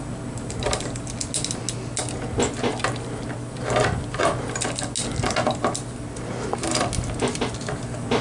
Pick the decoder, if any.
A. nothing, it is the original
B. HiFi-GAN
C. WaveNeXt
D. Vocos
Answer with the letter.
A